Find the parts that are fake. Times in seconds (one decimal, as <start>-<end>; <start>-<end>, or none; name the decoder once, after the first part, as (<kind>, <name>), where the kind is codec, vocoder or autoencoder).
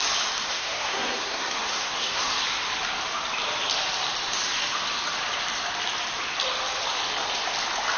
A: 0.5-2.4 (codec, SNAC)